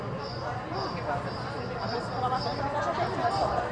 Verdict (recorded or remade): recorded